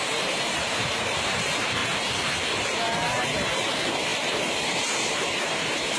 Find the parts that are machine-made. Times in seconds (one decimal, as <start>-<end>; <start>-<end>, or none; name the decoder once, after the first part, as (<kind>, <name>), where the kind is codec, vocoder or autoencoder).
0.0-1.8 (vocoder, BigVGAN v2); 2.5-6.0